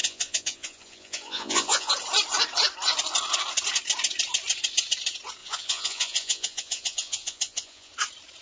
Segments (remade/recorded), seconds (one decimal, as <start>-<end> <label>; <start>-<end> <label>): 0.0-1.9 remade; 1.9-5.4 recorded; 5.4-7.9 remade; 7.9-8.4 recorded